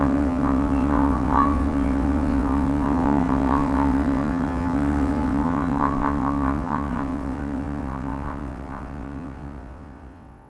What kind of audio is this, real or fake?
fake